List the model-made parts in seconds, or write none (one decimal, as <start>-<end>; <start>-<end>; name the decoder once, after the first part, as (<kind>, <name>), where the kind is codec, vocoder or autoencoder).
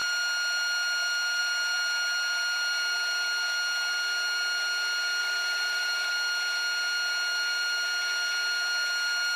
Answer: 5.2-6.1 (vocoder, BigVGAN v2)